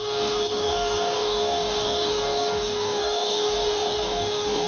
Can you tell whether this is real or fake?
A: fake